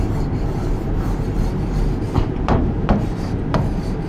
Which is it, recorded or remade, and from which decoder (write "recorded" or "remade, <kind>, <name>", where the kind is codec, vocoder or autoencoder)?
remade, vocoder, BigVGAN v2